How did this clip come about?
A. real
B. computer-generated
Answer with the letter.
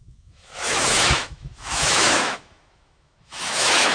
B